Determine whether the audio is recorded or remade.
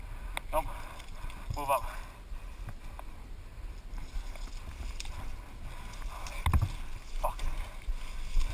recorded